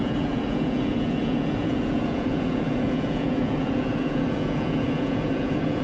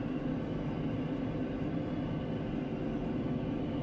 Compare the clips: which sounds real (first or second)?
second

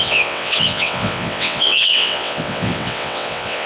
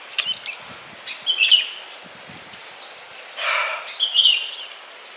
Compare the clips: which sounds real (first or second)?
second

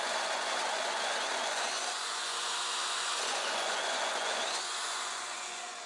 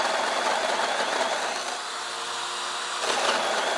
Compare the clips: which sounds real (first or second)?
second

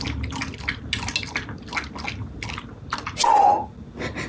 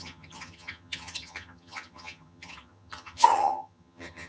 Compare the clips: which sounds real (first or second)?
first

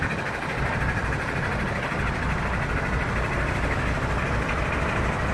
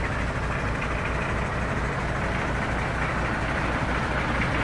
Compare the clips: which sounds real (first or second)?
second